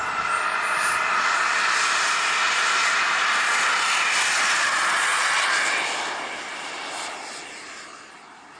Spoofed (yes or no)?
no